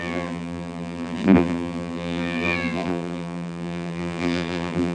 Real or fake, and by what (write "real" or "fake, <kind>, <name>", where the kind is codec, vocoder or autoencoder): fake, vocoder, BigVGAN v2